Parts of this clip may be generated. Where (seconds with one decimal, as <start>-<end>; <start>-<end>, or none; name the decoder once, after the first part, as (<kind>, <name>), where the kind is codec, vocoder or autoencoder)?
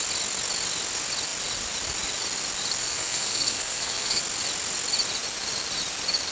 2.8-4.2 (codec, SNAC)